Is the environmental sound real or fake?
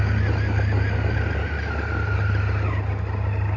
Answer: real